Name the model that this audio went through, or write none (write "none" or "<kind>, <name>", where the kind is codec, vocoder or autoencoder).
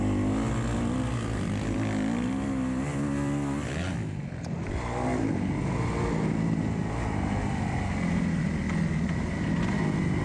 none